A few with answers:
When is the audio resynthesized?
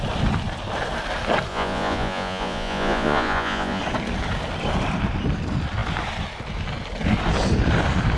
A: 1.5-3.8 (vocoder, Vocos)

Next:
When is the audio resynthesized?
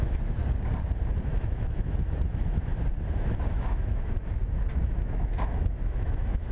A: 0.0-0.4 (autoencoder, DAC-VAE); 1.2-2.7; 3.5-6.5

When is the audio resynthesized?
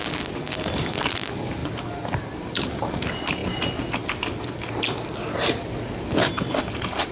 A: none